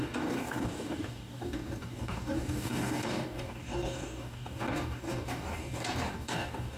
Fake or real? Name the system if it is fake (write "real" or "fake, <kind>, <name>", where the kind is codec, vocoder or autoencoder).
fake, codec, DAC